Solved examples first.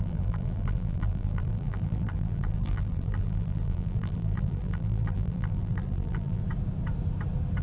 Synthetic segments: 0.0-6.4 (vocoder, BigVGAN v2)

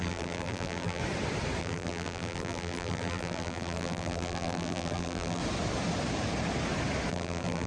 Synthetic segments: 0.0-1.0 (vocoder, BigVGAN v2); 1.6-5.4; 7.1-7.7

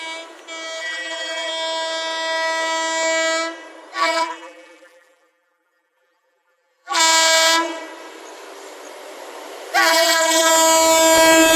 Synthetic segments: 0.8-1.5 (vocoder, BigVGAN v2); 4.0-7.0; 9.9-10.5

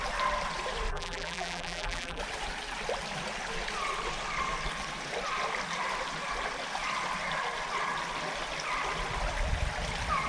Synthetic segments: 0.9-2.2 (vocoder, BigVGAN v2)

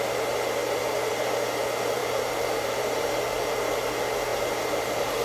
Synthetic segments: 2.0-3.2 (vocoder, BigVGAN v2); 4.3-5.2

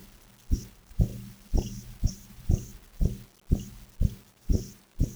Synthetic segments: 0.7-1.1 (vocoder, BigVGAN v2); 2.1-2.7; 4.3-5.2

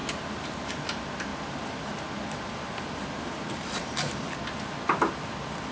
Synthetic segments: 0.0-0.7 (vocoder, BigVGAN v2); 1.3-4.3

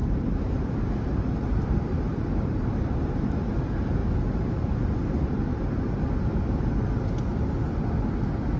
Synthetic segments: 0.0-3.5 (vocoder, BigVGAN v2)